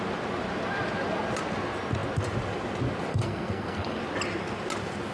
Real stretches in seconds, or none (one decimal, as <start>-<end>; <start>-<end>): 0.0-3.1; 4.0-5.1